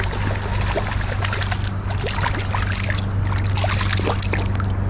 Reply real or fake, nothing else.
real